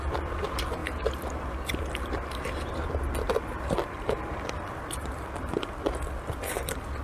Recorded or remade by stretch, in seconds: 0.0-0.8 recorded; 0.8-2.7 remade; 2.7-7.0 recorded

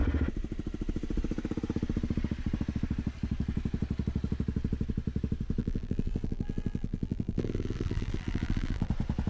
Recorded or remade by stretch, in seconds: 0.0-5.6 recorded; 5.6-8.9 remade; 8.9-9.3 recorded

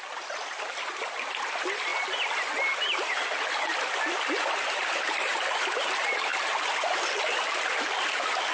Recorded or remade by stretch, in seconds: 0.0-8.5 recorded

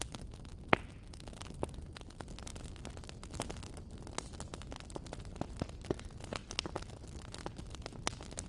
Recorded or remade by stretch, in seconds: 0.0-2.5 remade; 2.5-3.6 recorded; 3.6-6.4 remade; 6.4-7.0 recorded; 7.0-8.5 remade